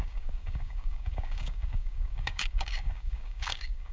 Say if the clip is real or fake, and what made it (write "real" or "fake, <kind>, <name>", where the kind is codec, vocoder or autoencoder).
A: fake, codec, DAC